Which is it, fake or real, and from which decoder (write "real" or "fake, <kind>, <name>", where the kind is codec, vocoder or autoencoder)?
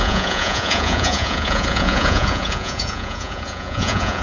fake, vocoder, Vocos